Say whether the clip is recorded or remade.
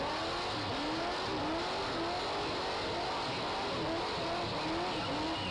recorded